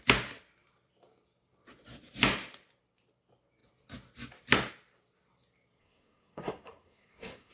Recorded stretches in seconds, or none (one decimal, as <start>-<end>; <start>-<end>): 0.0-5.8